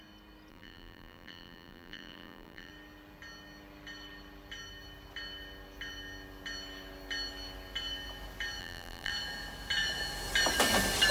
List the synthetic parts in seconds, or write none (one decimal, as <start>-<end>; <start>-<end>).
0.5-2.7; 8.6-9.1